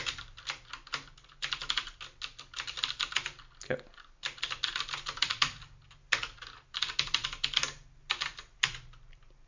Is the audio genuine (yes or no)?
yes